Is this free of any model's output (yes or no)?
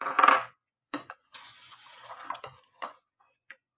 no